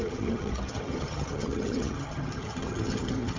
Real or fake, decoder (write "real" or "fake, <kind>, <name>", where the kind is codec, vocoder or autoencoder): fake, vocoder, HiFi-GAN